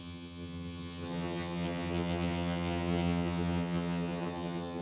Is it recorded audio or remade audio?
remade